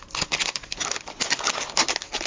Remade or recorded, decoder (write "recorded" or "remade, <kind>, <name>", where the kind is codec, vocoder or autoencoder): recorded